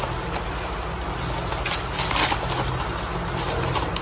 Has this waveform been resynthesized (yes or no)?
no